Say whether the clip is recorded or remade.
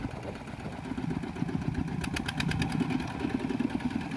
recorded